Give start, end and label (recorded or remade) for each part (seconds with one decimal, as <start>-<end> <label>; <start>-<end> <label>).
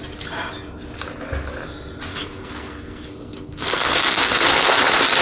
0.0-2.1 recorded; 2.1-4.4 remade; 4.4-5.2 recorded